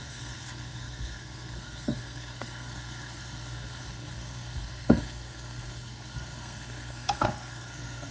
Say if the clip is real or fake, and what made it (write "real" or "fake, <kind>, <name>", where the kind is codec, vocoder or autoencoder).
fake, codec, SNAC